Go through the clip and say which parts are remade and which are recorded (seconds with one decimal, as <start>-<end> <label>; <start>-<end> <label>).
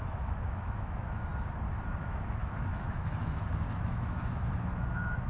0.0-1.3 remade; 1.3-2.0 recorded; 2.0-5.3 remade